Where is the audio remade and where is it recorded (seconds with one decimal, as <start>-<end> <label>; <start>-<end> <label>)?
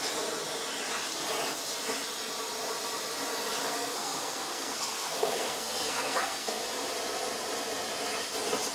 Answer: 0.0-3.6 recorded; 3.6-6.6 remade; 6.6-8.7 recorded